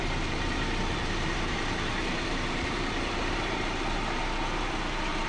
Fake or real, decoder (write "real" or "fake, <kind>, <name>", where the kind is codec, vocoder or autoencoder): fake, vocoder, BigVGAN v2